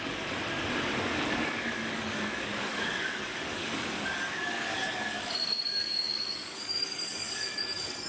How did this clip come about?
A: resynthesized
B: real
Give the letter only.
A